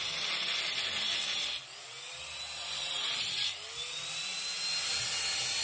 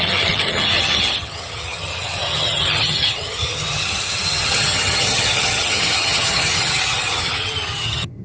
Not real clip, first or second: second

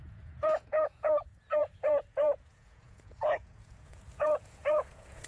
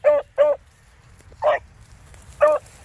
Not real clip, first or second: first